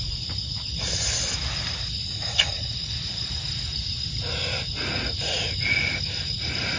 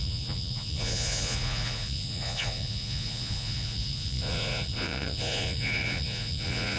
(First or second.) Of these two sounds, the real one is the first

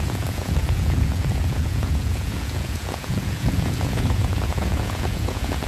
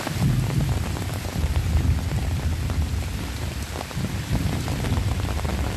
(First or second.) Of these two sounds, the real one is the second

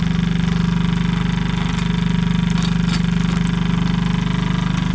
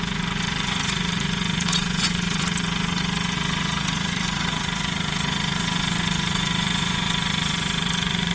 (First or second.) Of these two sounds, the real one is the first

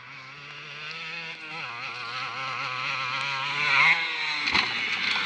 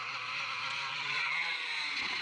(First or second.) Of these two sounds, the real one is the first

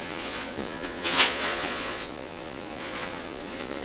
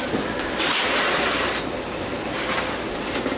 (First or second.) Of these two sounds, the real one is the second